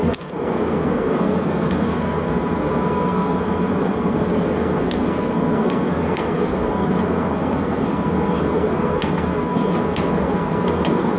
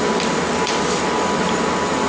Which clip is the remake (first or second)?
first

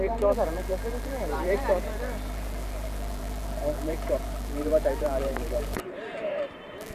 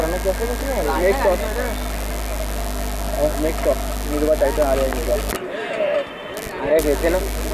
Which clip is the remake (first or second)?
first